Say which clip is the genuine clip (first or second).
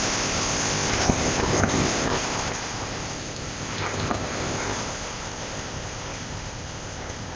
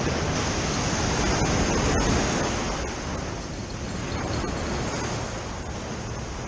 second